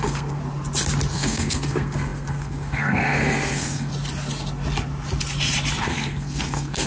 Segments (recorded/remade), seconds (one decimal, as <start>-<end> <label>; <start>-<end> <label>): 0.0-0.4 remade; 0.4-1.1 recorded; 1.1-3.9 remade; 3.9-5.8 recorded; 5.8-6.9 remade